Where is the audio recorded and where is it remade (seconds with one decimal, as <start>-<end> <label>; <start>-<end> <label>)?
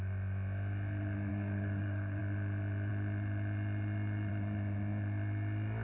0.0-1.3 recorded; 1.3-2.2 remade; 2.2-5.8 recorded